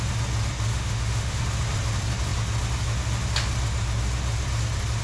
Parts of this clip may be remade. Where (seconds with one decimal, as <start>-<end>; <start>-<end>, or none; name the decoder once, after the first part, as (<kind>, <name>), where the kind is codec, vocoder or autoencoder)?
0.7-1.4 (autoencoder, DAC-VAE)